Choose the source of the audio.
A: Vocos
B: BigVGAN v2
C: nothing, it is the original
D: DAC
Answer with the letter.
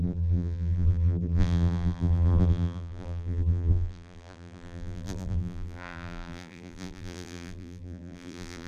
B